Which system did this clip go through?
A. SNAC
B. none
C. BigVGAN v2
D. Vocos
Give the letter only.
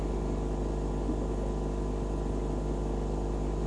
B